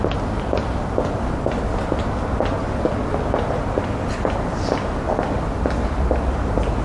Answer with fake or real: real